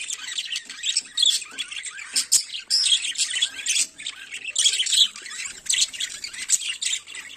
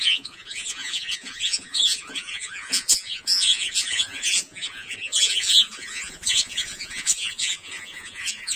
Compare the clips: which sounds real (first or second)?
first